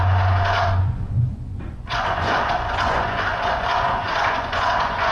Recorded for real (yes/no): no